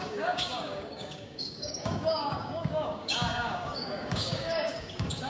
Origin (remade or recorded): remade